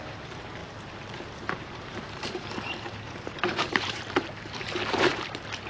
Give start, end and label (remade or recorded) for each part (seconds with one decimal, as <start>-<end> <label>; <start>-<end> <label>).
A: 0.0-5.7 remade